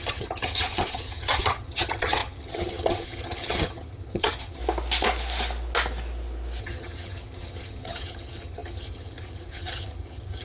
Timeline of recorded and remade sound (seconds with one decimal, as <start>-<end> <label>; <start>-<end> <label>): 0.0-4.6 remade; 4.6-6.6 recorded; 6.6-10.4 remade